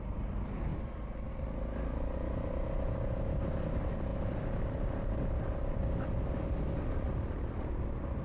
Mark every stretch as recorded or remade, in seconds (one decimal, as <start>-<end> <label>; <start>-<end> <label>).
0.0-8.2 recorded